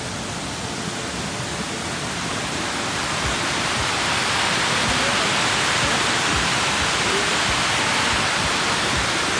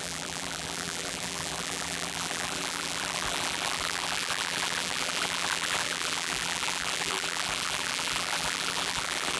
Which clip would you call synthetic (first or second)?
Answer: second